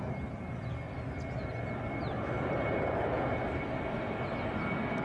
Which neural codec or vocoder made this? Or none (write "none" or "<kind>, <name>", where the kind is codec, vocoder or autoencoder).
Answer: none